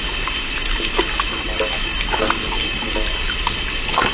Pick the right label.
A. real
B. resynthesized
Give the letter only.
A